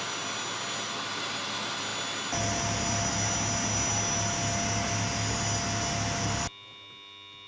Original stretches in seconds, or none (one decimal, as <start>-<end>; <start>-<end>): 0.0-7.5